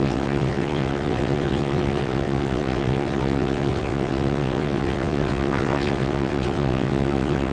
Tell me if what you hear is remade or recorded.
remade